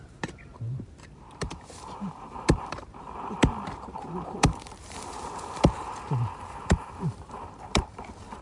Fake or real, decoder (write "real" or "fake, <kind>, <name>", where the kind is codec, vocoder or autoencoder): fake, vocoder, BigVGAN v2